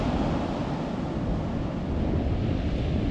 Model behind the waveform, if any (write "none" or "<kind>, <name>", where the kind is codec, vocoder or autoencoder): none